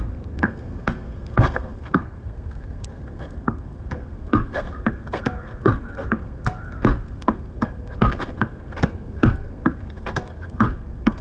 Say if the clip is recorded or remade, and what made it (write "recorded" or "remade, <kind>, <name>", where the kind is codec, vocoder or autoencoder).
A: remade, codec, SNAC